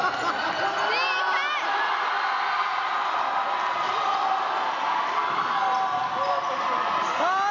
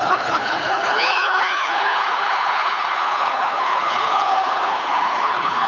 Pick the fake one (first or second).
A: second